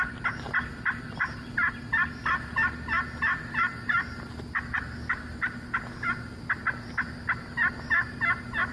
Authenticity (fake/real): real